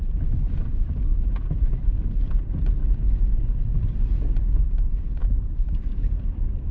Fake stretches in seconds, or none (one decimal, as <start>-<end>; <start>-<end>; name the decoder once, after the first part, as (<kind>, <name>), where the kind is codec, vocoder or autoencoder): 0.0-2.8 (vocoder, BigVGAN v2); 4.6-6.7